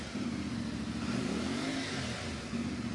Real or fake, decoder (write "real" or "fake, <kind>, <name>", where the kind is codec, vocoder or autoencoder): real